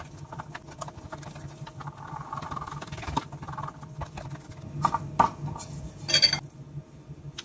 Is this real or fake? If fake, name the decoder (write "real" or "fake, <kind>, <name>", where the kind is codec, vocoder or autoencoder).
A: real